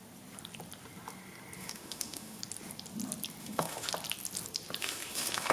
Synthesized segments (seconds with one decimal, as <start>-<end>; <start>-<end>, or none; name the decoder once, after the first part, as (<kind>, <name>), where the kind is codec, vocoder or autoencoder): 1.6-2.4 (autoencoder, DAC-VAE); 3.4-3.9; 4.8-5.5